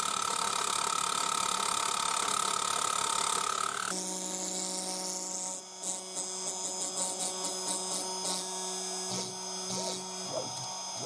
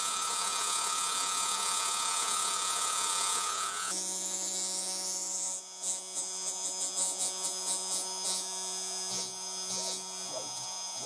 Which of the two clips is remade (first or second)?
second